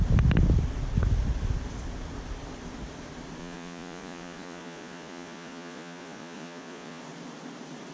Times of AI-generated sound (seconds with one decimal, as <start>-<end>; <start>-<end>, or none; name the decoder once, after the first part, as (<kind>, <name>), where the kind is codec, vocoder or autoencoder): 3.4-7.0 (vocoder, Vocos)